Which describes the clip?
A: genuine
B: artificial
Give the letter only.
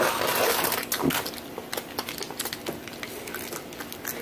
A